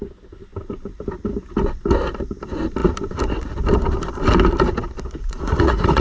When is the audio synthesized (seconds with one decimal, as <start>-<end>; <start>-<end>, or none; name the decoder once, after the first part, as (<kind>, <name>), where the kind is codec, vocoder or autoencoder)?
5.2-6.0 (vocoder, Vocos)